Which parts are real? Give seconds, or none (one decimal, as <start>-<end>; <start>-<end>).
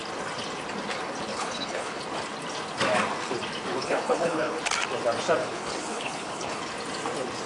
0.0-1.3; 2.0-3.8; 4.6-5.4; 6.6-7.5